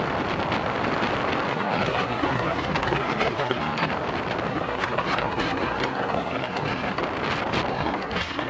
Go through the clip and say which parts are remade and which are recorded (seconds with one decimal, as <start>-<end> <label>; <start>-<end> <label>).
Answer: 0.0-1.5 recorded; 1.5-3.9 remade; 3.9-4.5 recorded; 4.5-7.0 remade; 7.0-7.7 recorded; 7.7-8.5 remade